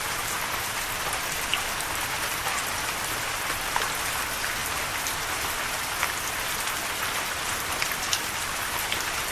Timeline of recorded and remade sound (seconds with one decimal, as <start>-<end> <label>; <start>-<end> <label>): 0.0-9.3 recorded